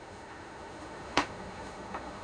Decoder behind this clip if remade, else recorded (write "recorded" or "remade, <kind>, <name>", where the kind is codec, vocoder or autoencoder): remade, autoencoder, DAC-VAE